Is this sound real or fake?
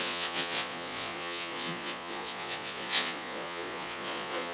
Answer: fake